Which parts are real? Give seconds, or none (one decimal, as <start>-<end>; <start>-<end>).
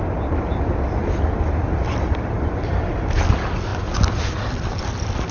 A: 0.0-5.3